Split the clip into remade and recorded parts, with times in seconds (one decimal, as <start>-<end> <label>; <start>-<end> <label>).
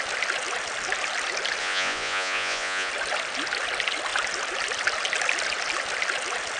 0.0-1.6 recorded; 1.6-2.9 remade; 2.9-6.6 recorded